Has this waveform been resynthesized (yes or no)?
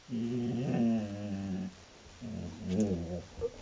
no